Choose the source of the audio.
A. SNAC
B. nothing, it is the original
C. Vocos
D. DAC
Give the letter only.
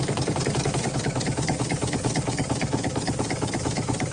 D